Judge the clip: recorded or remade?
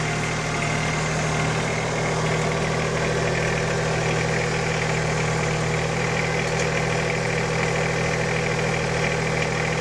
recorded